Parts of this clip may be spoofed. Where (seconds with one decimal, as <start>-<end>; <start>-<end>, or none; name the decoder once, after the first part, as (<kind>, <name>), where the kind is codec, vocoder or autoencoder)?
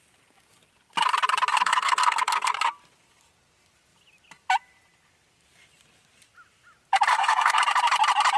1.5-2.5 (codec, SNAC); 7.1-7.6